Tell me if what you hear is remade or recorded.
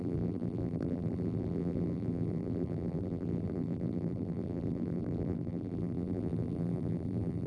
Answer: remade